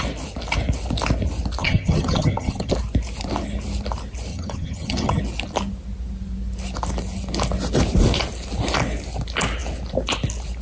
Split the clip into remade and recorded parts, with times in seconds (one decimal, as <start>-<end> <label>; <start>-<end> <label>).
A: 0.0-1.6 recorded; 1.6-2.7 remade; 2.7-4.3 recorded; 4.3-5.2 remade; 5.2-10.6 recorded